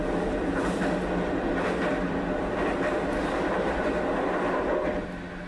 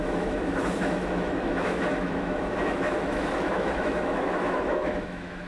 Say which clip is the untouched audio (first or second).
first